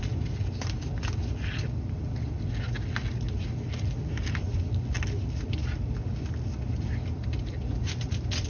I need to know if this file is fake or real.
real